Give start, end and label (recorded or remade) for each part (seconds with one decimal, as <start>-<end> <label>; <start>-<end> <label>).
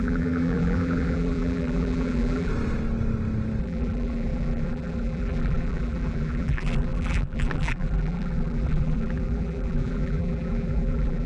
0.0-2.5 remade; 2.5-3.6 recorded; 3.6-11.3 remade